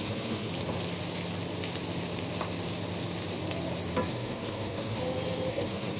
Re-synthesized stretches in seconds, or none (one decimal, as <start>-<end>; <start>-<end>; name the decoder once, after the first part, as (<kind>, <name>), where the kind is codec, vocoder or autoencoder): 0.0-0.5 (codec, SNAC); 4.1-5.0; 5.5-6.0